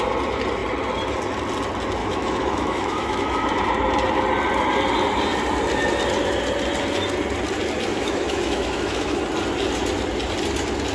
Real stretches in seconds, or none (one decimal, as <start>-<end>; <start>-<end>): 0.0-2.0; 3.6-7.9; 9.2-10.9